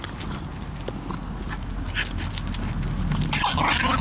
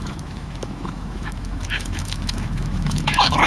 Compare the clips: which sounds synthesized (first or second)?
second